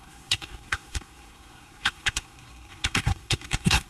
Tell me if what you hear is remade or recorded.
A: remade